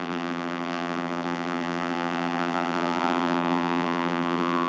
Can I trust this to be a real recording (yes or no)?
no